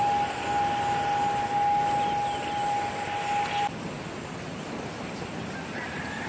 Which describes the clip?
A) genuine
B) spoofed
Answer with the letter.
A